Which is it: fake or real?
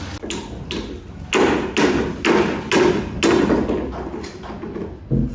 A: real